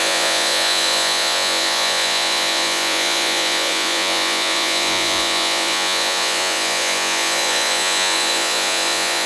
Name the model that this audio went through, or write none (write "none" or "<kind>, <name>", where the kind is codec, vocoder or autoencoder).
vocoder, Vocos